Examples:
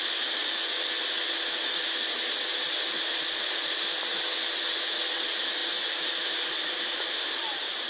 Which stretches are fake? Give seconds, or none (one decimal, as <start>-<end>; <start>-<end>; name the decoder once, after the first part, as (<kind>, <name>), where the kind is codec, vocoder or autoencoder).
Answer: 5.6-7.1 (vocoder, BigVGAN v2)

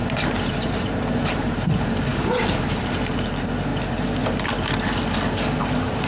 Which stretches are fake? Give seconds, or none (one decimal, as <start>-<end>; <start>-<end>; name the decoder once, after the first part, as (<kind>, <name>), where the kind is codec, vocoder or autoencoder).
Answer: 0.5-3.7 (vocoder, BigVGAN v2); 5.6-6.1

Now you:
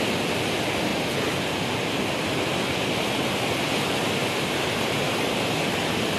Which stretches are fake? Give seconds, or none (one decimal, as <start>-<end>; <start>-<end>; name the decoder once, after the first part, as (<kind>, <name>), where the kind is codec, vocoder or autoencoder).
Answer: 4.2-5.6 (vocoder, BigVGAN v2)

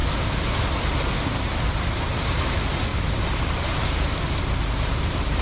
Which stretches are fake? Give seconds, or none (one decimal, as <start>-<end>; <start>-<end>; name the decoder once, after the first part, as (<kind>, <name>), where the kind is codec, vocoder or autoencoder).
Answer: 1.3-2.9 (vocoder, BigVGAN v2); 4.7-5.4